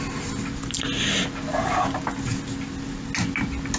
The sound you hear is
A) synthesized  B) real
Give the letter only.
B